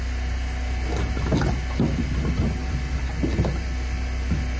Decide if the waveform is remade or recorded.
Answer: recorded